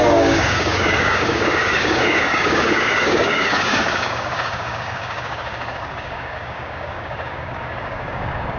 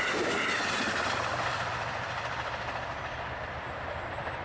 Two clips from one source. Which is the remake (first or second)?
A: first